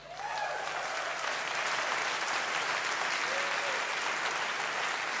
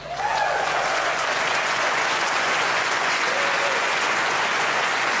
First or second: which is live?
first